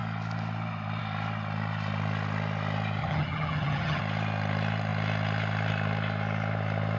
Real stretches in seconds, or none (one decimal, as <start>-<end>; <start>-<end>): 0.0-3.0; 4.0-7.0